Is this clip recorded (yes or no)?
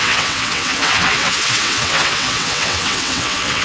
no